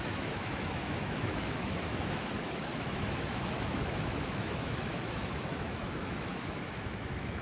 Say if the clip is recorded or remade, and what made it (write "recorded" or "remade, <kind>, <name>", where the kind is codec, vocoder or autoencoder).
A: remade, autoencoder, DAC-VAE